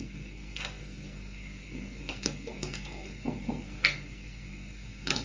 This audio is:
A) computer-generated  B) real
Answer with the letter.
A